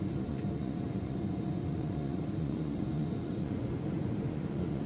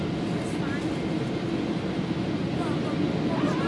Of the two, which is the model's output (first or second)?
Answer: first